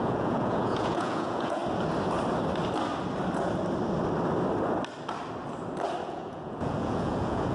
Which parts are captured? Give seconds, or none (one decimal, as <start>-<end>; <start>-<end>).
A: 1.6-6.1